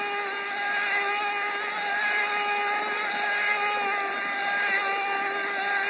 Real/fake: real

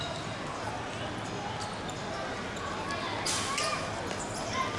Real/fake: real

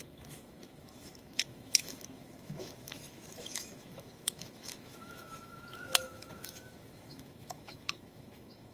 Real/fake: fake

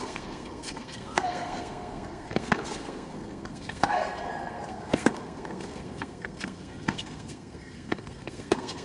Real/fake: fake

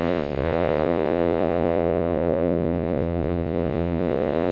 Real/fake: fake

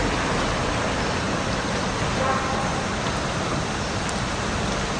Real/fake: real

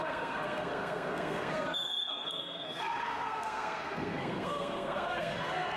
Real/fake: fake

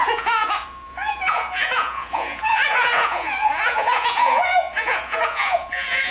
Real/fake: fake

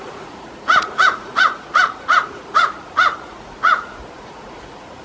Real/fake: fake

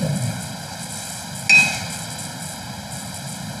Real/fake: real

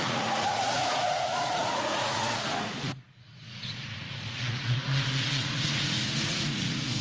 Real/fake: fake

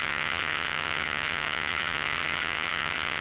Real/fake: fake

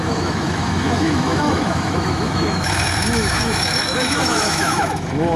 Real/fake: fake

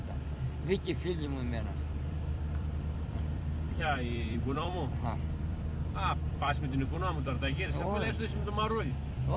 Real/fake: fake